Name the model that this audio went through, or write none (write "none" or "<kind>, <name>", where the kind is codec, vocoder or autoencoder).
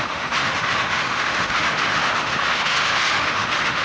autoencoder, DAC-VAE